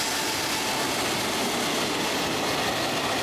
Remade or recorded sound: recorded